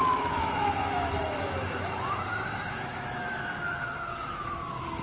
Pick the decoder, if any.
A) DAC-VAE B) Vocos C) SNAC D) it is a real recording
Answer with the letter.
A